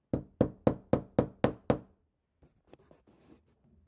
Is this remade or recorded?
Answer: recorded